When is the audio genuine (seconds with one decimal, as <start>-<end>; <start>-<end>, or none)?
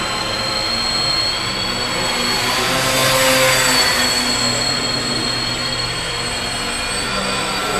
0.0-7.8